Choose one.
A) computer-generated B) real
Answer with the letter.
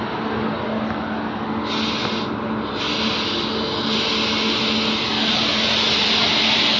B